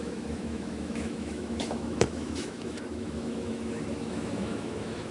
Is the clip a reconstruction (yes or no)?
yes